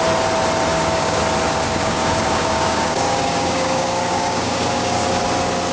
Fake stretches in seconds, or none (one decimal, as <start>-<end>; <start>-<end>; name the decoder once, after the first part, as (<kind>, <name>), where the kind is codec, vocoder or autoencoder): 0.7-1.2 (codec, DAC); 1.8-5.2